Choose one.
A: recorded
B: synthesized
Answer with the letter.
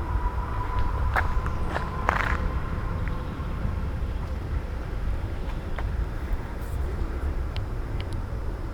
B